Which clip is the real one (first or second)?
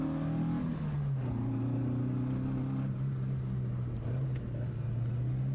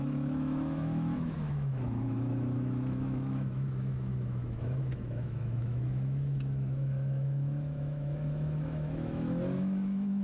first